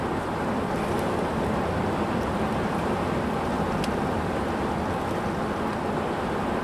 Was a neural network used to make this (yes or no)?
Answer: no